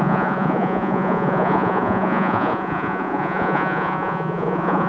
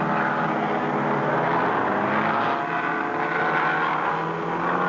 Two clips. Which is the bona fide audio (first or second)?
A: second